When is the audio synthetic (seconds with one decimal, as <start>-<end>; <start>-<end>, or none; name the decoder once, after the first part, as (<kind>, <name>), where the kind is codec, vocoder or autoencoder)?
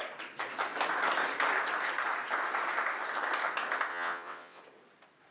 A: 3.9-4.6 (vocoder, WaveNeXt)